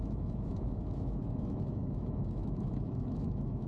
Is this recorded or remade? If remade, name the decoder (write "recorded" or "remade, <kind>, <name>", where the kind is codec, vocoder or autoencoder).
remade, autoencoder, DAC-VAE